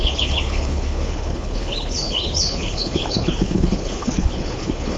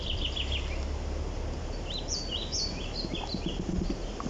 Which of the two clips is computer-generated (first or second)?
first